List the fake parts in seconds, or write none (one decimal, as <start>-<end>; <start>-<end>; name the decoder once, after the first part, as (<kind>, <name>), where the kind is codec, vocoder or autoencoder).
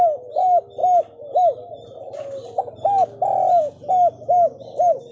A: none